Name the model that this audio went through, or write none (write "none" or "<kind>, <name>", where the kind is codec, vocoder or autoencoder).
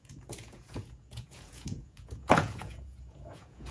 vocoder, Vocos